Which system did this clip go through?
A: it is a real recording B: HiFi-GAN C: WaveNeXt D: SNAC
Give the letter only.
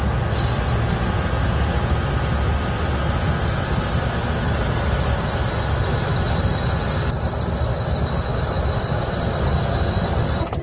A